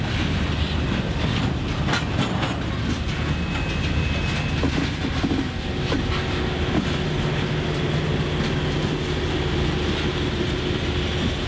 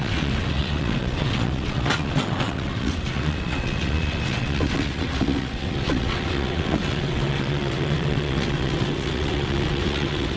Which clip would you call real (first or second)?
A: first